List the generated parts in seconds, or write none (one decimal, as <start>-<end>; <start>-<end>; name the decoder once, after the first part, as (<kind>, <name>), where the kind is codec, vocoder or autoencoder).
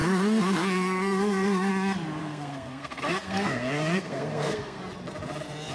0.0-1.7 (codec, SNAC); 2.2-4.8